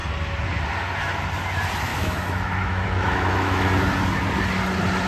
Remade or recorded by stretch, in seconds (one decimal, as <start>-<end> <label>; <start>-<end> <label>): 0.0-1.9 recorded; 1.9-3.7 remade; 3.7-5.1 recorded